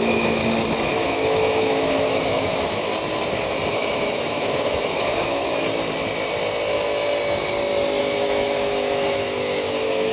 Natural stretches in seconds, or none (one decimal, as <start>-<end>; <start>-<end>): 0.4-0.9; 2.9-3.7; 5.5-8.0